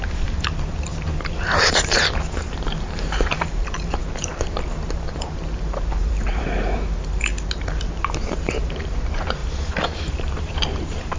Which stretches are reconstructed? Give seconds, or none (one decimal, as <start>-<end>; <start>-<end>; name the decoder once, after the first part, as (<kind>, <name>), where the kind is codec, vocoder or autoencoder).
0.0-7.3 (vocoder, BigVGAN v2); 8.3-11.2